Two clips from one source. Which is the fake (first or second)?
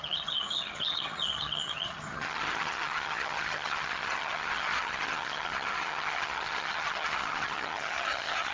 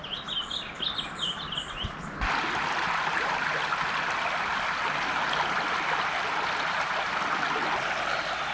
first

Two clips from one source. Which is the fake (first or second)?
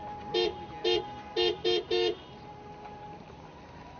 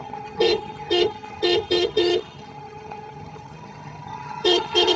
second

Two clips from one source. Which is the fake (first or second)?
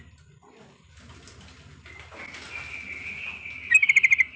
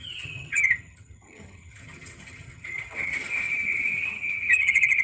second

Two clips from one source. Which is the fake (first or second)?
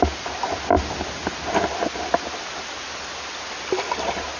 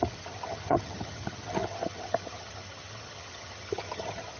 second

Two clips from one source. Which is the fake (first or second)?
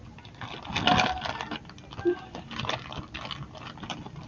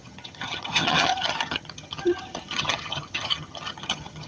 second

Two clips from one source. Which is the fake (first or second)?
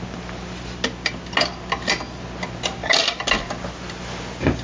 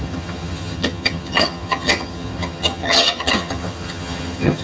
second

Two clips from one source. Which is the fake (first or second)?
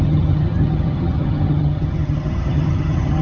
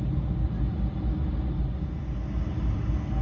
first